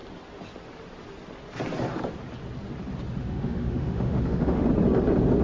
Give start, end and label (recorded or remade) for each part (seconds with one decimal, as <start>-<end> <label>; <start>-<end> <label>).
0.0-3.2 recorded; 3.2-4.7 remade; 4.7-5.4 recorded